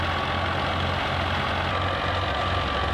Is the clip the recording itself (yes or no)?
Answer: yes